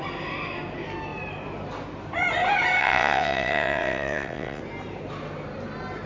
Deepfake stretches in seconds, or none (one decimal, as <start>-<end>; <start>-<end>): 2.8-4.6